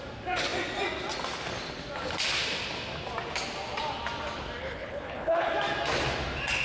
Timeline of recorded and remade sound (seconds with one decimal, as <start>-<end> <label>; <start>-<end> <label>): 0.0-4.6 recorded; 4.6-5.5 remade; 5.5-6.6 recorded